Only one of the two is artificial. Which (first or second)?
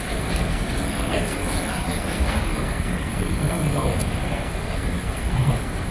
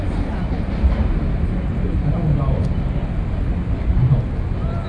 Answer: first